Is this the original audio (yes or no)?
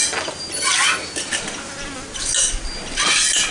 yes